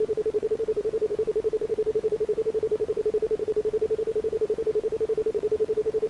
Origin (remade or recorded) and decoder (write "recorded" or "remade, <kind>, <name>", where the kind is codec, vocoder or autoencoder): remade, vocoder, Vocos